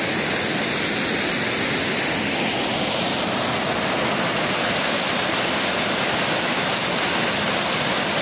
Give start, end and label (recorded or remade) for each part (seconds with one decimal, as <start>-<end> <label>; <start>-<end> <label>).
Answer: 0.0-8.2 recorded